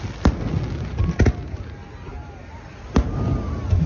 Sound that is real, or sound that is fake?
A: real